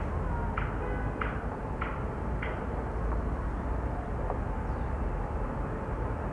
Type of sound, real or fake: real